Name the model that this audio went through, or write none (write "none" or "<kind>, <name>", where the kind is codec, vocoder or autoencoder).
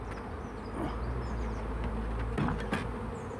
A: none